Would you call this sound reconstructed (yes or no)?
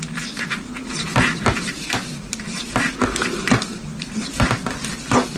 no